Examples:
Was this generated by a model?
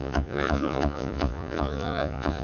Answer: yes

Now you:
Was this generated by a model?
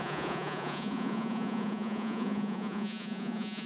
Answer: yes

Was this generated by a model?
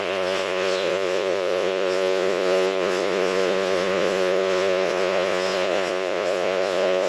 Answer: yes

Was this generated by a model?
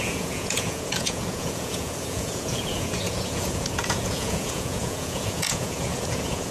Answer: yes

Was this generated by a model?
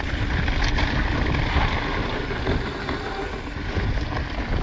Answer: no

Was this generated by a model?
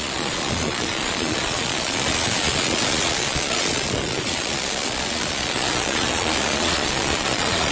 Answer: yes